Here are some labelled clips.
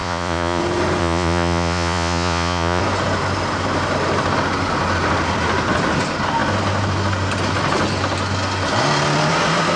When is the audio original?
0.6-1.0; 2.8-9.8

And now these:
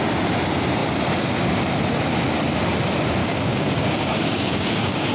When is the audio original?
0.0-3.2

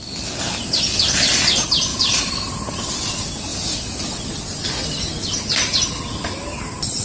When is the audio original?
0.0-7.0

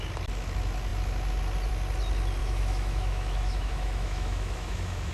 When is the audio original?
0.0-2.4

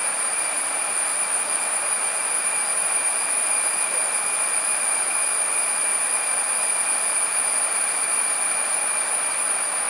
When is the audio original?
0.0-9.9

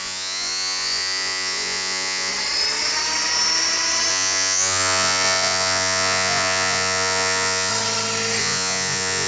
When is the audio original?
2.3-4.1; 7.7-8.4